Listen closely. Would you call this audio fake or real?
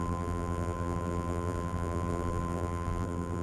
fake